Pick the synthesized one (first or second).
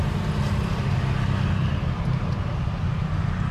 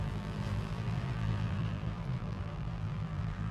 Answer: second